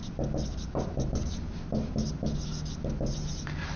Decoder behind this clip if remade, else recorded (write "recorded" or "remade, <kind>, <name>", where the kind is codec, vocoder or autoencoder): recorded